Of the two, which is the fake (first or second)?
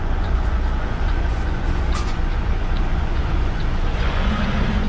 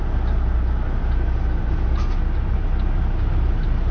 first